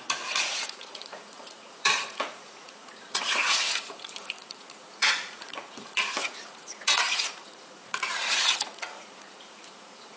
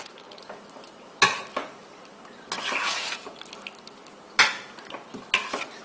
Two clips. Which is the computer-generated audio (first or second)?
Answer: first